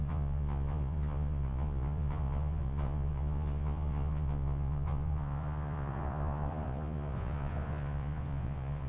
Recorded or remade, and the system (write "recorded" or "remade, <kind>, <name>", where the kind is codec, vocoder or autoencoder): remade, vocoder, Vocos